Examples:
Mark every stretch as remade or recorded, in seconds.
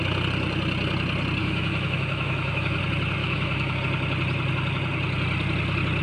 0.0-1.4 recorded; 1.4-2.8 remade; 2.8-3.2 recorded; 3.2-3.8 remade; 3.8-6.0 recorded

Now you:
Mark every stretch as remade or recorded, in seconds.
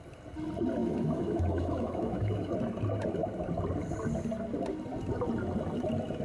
0.0-0.8 recorded; 0.8-2.5 remade; 2.5-6.2 recorded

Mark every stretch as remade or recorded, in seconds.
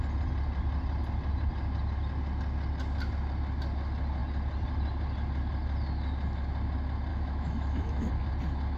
0.0-7.1 recorded; 7.1-8.1 remade; 8.1-8.8 recorded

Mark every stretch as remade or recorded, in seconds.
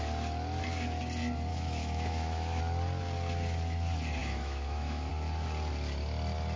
0.0-1.5 recorded; 1.5-2.6 remade; 2.6-4.2 recorded; 4.2-5.1 remade; 5.1-6.6 recorded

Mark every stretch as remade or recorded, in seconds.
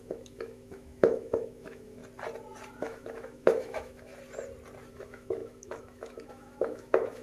0.0-2.0 remade; 2.0-2.8 recorded; 2.8-4.1 remade; 4.1-4.9 recorded; 4.9-7.2 remade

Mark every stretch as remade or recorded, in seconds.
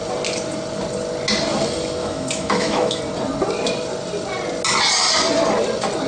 0.0-2.0 recorded; 2.0-3.0 remade; 3.0-6.1 recorded